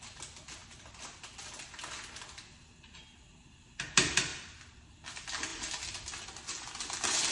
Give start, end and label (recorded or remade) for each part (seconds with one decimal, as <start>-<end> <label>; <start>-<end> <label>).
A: 0.0-7.3 recorded